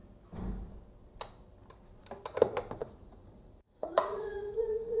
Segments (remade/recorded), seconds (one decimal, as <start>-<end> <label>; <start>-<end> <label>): 0.0-2.8 recorded; 2.8-5.0 remade